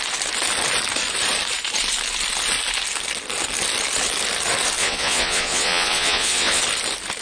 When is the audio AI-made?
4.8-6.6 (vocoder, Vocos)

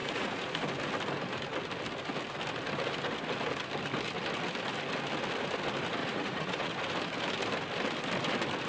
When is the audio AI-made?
0.0-0.5 (vocoder, Vocos); 6.0-6.8

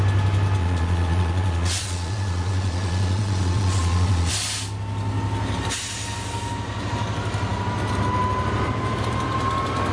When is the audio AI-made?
0.6-4.3 (vocoder, Vocos)

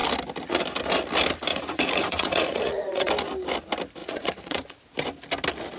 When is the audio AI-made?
1.5-3.1 (vocoder, Vocos); 4.0-4.7

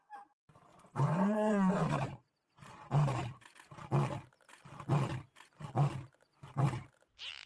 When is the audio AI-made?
0.7-1.7 (vocoder, Vocos)

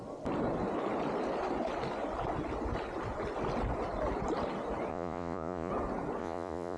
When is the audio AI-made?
4.9-5.7 (vocoder, Vocos); 6.2-6.8